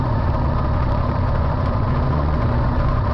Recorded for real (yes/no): no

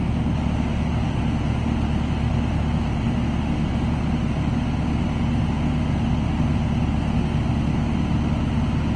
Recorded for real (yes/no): yes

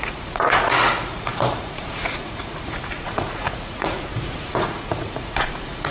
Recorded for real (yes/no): no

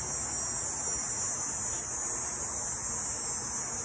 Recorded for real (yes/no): yes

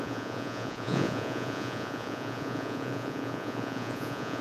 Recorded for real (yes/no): no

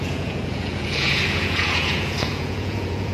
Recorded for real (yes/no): no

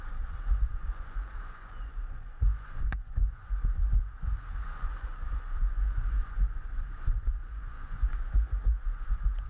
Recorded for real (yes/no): no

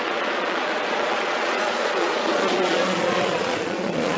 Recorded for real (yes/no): no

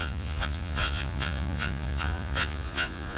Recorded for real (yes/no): no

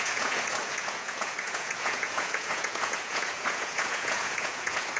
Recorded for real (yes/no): no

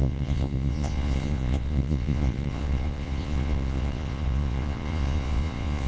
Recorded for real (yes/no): no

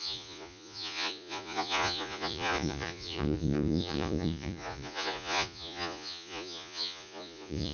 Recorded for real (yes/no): no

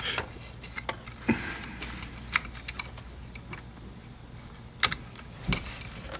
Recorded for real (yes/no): yes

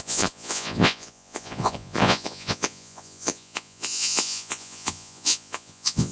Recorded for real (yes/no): no